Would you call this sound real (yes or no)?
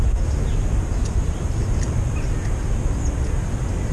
yes